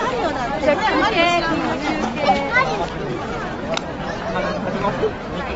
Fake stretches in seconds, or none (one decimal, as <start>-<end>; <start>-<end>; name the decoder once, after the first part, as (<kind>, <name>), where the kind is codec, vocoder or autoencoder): none